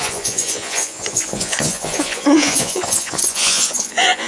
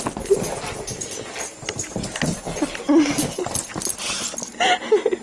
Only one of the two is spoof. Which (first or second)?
first